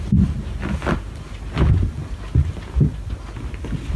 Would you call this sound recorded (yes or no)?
yes